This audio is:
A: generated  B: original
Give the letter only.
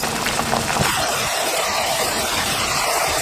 A